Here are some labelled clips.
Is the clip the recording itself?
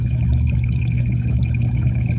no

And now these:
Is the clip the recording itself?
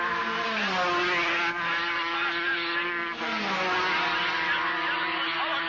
yes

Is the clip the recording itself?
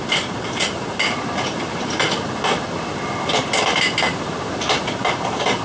no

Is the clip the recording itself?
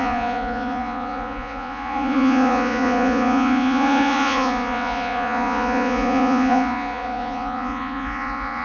no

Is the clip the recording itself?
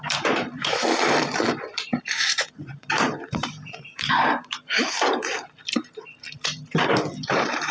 no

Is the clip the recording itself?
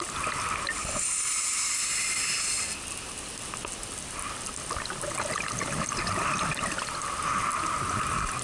yes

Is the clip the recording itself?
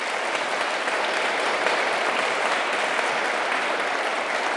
no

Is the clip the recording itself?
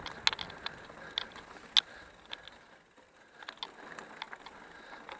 yes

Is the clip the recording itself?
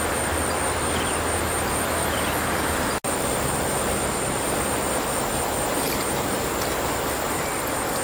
yes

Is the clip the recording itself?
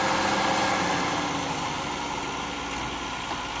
yes